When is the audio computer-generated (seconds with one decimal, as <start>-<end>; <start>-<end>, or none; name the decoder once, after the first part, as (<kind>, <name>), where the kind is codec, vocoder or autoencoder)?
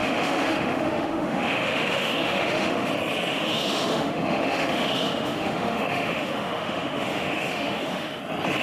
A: 0.0-2.9 (autoencoder, DAC-VAE); 3.3-8.2